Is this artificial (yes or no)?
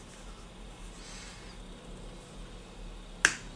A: no